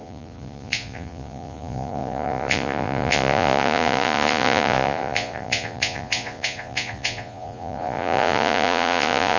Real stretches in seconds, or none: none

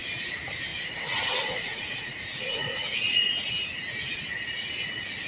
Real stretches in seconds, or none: 0.0-0.7; 3.5-5.3